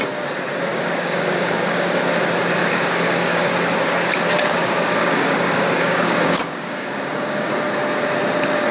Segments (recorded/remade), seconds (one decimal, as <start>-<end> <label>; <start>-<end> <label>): 0.0-0.7 recorded; 0.7-2.0 remade; 2.0-2.6 recorded; 2.6-3.5 remade; 3.5-4.6 recorded; 4.6-7.5 remade; 7.5-8.7 recorded